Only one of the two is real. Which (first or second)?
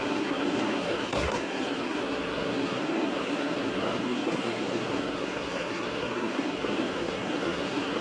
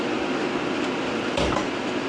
second